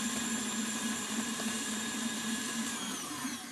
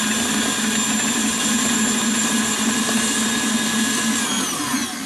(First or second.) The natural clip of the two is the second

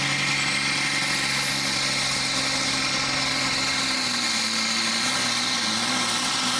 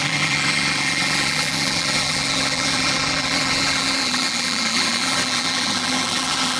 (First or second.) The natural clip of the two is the first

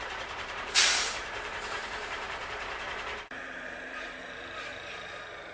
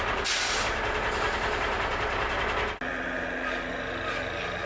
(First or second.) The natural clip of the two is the second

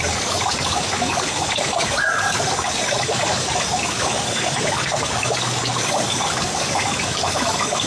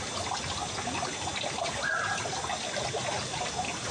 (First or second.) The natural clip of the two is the second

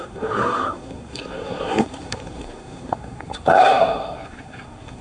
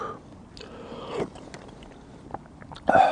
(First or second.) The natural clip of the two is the second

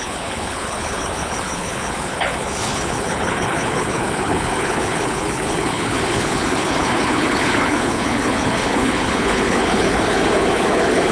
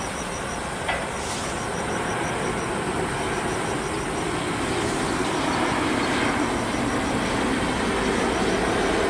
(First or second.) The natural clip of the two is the second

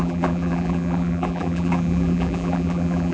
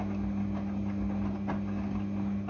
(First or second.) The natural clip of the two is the second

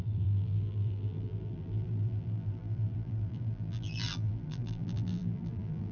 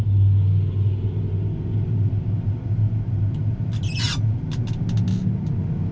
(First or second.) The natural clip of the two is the second